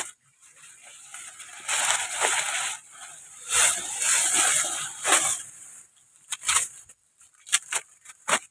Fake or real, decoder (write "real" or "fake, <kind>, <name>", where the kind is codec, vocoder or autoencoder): real